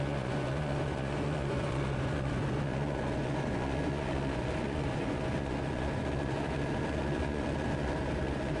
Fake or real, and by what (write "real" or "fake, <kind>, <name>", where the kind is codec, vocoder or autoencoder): fake, vocoder, Vocos